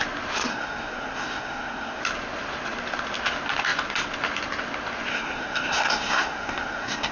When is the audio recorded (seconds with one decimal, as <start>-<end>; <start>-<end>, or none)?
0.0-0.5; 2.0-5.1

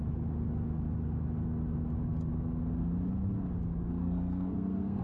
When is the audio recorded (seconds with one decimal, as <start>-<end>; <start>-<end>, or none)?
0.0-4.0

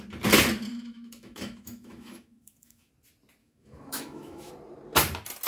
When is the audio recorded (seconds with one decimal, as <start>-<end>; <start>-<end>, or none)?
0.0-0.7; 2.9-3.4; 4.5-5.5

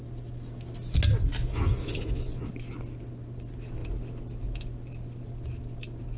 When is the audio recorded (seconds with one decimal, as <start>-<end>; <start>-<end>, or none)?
0.0-1.4; 2.5-6.2

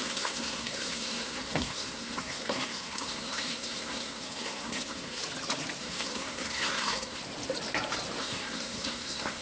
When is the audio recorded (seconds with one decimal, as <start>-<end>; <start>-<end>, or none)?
5.2-5.8; 7.2-8.2

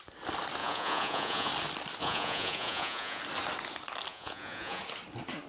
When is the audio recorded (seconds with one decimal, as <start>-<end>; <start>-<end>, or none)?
0.0-0.6; 1.5-2.0; 3.2-4.1; 4.8-5.5

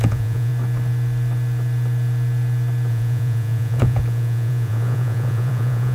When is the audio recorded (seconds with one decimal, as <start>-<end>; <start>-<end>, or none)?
0.5-2.9